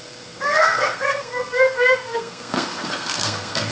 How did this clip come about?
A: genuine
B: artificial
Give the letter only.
B